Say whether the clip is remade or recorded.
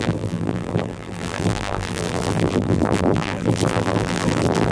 remade